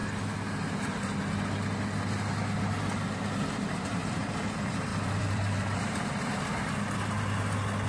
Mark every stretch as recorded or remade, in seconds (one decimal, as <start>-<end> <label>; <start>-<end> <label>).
0.0-4.9 recorded; 4.9-6.6 remade; 6.6-7.9 recorded

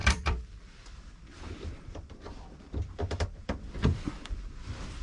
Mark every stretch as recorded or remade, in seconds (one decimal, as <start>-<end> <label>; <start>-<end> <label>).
0.0-5.0 remade

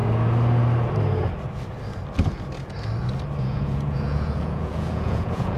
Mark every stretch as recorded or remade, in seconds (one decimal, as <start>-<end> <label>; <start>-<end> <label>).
0.0-3.4 recorded; 3.4-5.6 remade

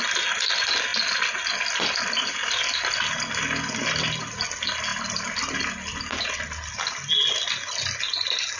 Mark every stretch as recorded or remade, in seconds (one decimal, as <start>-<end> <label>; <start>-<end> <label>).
0.0-8.6 recorded

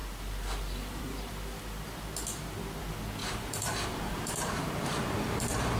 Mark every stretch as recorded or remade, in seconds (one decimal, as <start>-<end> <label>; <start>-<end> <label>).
0.0-3.2 recorded; 3.2-5.8 remade